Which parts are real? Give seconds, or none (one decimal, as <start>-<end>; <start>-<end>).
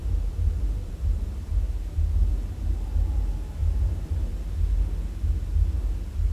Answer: 2.0-3.6; 4.6-6.3